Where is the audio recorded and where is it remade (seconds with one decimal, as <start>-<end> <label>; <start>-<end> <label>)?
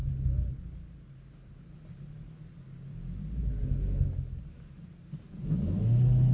0.0-6.3 recorded